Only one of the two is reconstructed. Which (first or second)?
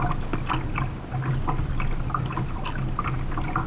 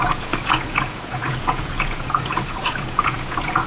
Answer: second